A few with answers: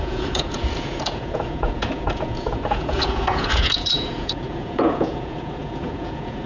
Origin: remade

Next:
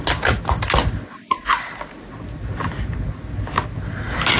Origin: recorded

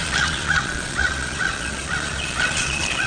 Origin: remade